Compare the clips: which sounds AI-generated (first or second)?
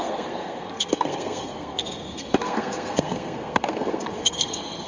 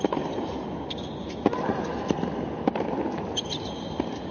first